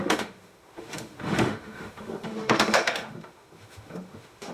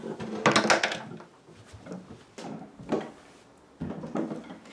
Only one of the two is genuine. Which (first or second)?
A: second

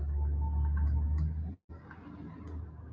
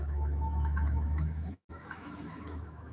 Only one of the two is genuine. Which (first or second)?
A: first